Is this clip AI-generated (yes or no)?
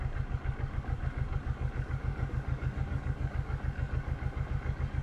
yes